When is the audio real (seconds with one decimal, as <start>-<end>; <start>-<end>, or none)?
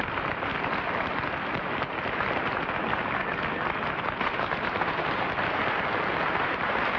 0.5-4.0; 5.6-6.2